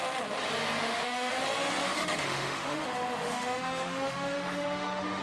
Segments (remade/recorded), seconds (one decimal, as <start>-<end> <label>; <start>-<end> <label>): 0.0-0.8 recorded; 0.8-1.4 remade; 1.4-1.8 recorded; 1.8-5.2 remade